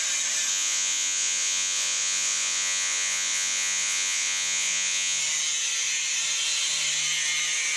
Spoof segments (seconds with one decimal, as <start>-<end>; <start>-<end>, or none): 0.5-5.2